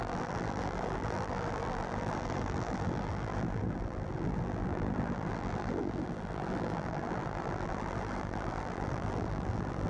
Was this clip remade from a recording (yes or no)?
yes